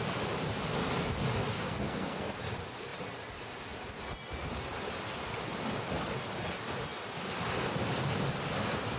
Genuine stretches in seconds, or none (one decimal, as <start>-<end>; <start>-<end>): 0.0-1.5; 2.3-9.0